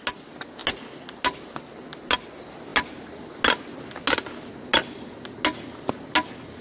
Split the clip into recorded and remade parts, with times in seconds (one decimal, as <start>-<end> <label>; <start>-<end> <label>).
0.0-6.6 recorded